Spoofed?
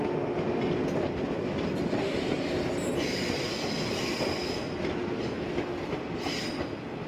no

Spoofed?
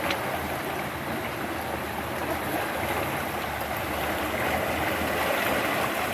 no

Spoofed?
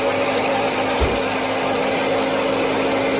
no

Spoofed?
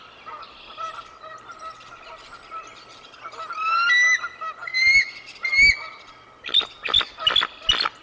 no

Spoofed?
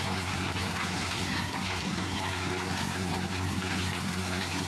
yes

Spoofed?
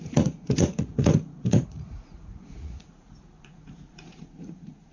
yes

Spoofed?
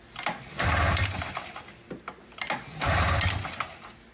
no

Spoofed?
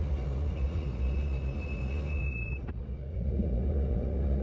yes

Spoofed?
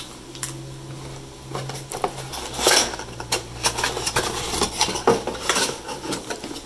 no